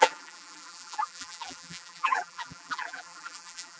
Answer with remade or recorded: remade